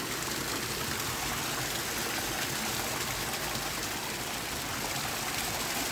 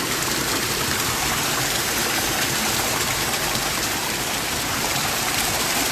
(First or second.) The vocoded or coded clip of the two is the second